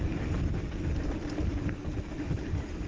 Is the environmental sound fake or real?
real